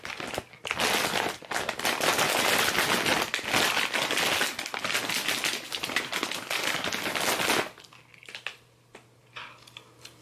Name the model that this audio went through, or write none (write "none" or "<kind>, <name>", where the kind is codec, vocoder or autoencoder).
none